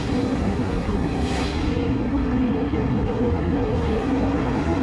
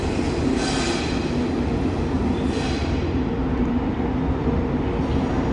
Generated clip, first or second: first